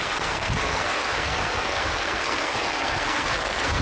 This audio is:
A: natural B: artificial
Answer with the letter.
B